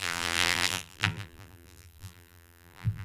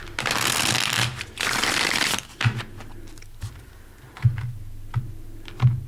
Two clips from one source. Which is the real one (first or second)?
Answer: second